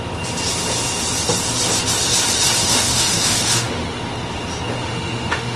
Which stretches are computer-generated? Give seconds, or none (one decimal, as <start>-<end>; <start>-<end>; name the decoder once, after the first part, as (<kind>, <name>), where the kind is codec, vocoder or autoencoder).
2.6-4.0 (autoencoder, DAC-VAE); 4.8-5.6